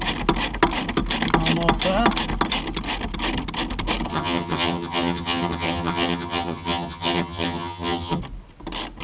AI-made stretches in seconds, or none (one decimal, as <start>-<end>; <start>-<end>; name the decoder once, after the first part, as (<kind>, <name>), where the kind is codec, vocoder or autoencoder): 4.1-8.2 (vocoder, HiFi-GAN)